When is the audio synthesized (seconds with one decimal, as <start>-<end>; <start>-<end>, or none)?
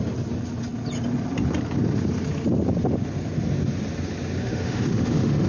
4.4-5.5